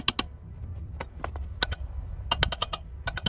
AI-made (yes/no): no